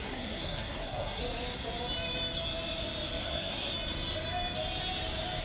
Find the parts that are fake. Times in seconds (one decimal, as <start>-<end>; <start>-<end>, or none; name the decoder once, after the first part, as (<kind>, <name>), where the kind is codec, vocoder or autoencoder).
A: 0.0-1.2 (codec, SNAC); 3.2-3.7